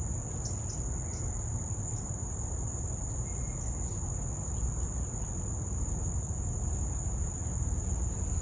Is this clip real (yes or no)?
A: yes